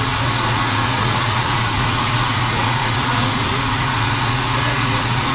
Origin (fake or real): fake